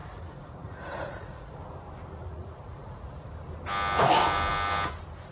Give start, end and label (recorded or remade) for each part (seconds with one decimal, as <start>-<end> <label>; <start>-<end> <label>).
0.0-1.6 remade; 1.6-2.2 recorded; 2.2-3.3 remade; 3.3-5.3 recorded